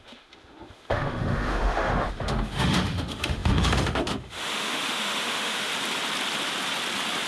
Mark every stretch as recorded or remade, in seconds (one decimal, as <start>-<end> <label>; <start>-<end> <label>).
0.0-5.7 remade; 5.7-7.3 recorded